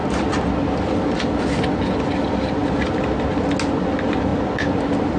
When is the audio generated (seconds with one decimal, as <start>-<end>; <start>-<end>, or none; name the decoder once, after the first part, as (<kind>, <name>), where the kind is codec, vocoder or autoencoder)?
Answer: none